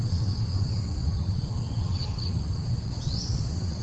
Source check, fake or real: fake